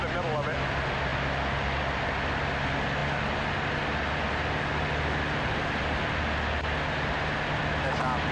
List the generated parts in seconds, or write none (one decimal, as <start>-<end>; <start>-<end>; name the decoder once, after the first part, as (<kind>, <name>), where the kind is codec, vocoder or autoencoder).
none